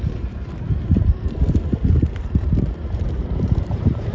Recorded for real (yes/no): no